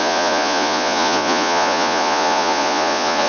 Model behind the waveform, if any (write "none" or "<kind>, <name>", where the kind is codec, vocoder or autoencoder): vocoder, Vocos